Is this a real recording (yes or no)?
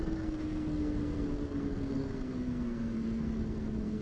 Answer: no